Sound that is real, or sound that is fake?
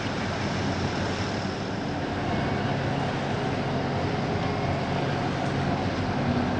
real